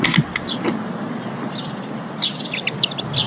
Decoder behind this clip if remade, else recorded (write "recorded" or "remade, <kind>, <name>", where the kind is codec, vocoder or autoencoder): recorded